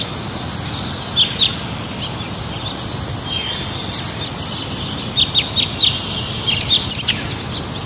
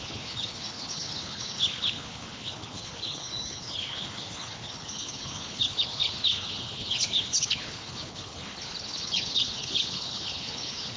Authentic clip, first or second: first